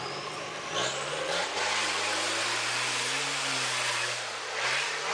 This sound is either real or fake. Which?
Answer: real